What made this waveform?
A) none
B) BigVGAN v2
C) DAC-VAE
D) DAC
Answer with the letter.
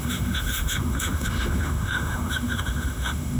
C